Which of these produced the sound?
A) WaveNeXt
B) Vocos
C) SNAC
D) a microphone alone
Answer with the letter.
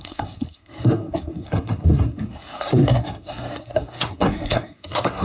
C